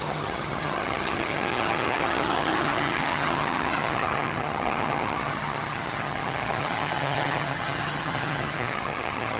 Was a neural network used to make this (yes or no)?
yes